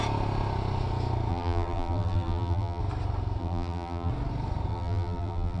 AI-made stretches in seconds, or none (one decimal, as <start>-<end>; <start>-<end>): 1.3-2.8; 3.4-4.1; 4.7-5.6